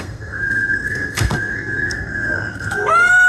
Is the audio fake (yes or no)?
yes